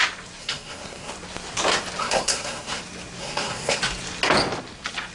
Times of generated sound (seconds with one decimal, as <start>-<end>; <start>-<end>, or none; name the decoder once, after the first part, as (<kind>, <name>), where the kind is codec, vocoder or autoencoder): 0.4-1.1 (codec, SNAC); 2.0-2.8; 3.2-3.8